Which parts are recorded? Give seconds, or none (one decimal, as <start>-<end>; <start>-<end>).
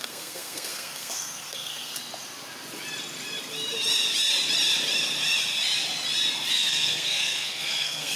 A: 1.9-6.5